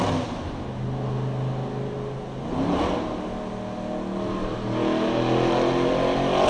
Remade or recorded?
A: recorded